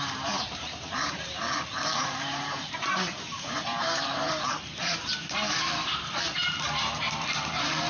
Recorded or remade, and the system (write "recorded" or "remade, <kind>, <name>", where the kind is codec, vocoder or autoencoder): remade, vocoder, BigVGAN v2